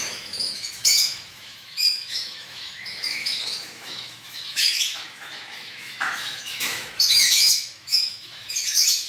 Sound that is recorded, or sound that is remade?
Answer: remade